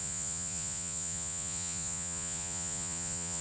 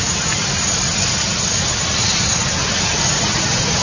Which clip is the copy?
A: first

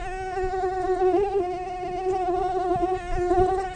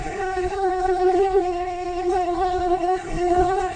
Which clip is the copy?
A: second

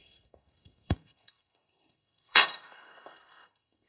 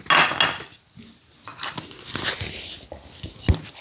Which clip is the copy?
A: first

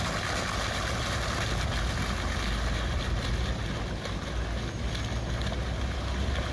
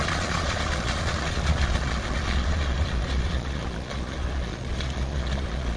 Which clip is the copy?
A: second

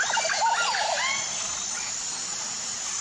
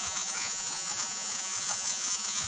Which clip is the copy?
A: second